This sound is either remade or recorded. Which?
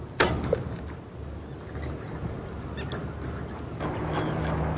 recorded